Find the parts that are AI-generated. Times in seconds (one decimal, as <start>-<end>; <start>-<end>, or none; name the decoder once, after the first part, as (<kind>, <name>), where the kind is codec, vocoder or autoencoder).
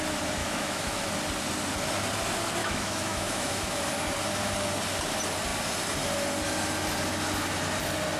0.4-1.1 (autoencoder, DAC-VAE); 2.6-3.9